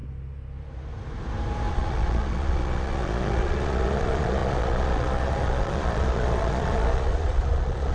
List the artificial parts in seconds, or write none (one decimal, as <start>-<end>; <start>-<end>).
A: 1.7-7.9